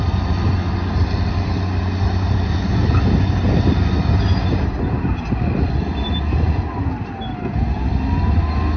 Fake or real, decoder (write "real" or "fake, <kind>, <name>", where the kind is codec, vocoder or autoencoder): real